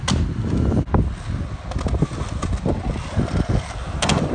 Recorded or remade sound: recorded